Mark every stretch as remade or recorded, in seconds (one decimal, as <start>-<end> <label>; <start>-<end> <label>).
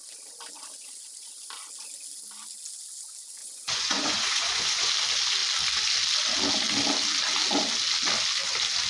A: 0.0-3.4 recorded; 3.4-4.9 remade; 4.9-8.9 recorded